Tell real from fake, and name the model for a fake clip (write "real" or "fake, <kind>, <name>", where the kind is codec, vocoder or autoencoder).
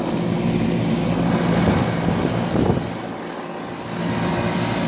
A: real